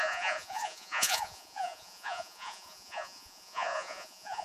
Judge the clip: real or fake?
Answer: fake